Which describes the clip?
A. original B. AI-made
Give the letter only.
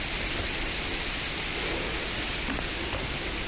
A